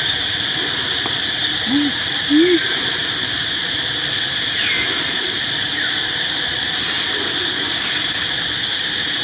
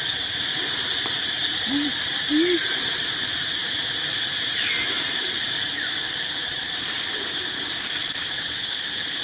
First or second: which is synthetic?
second